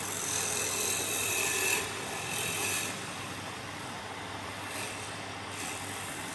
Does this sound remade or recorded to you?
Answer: recorded